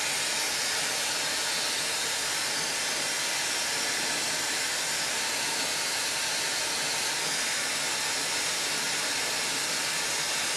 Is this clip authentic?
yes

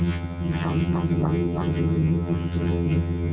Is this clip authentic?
no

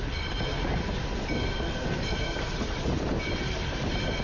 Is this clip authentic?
yes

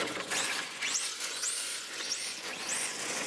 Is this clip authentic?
no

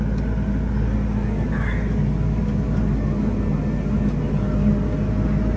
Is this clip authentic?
yes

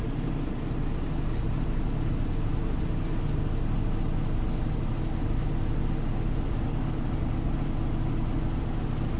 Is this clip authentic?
yes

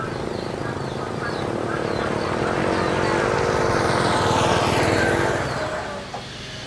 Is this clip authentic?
yes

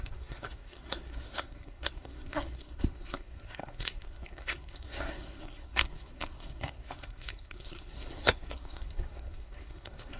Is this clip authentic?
no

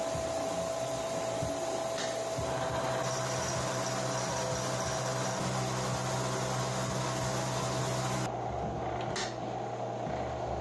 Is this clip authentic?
yes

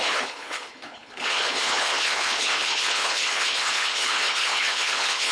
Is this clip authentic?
no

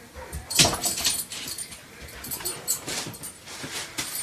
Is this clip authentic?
no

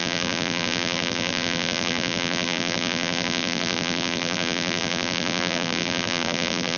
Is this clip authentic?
no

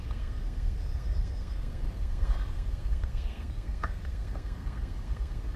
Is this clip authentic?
no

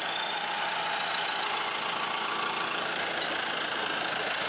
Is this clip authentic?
yes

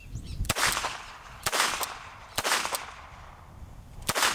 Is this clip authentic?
no